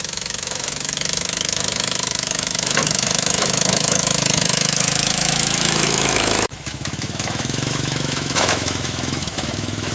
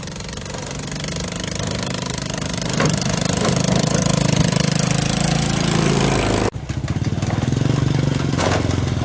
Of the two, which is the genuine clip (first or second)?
second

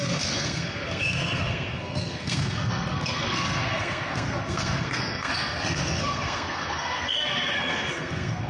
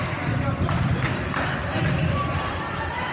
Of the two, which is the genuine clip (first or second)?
second